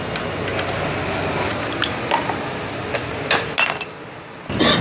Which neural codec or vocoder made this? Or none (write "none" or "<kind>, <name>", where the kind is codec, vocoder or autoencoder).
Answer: none